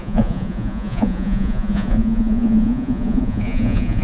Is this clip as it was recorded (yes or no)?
no